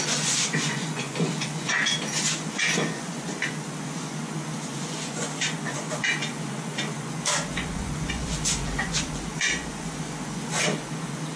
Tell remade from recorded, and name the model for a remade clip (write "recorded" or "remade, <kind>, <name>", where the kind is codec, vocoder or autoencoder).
remade, vocoder, Vocos